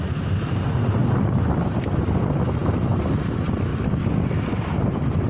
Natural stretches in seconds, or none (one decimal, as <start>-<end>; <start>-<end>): 0.0-1.0; 1.9-5.3